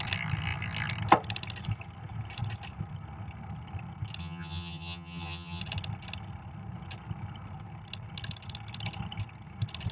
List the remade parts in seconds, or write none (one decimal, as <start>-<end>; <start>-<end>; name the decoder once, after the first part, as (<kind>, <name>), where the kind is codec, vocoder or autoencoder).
4.2-5.6 (vocoder, HiFi-GAN)